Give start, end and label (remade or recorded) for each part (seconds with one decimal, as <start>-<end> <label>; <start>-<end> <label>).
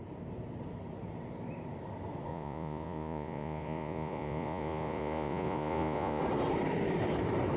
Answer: 0.0-2.3 recorded; 2.3-6.2 remade; 6.2-7.6 recorded